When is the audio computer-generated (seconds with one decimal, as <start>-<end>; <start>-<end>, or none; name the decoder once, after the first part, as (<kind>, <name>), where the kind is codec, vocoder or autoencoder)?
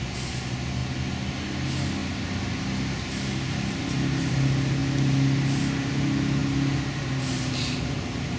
none